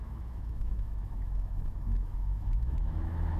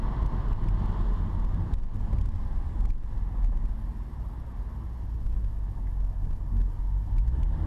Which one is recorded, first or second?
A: second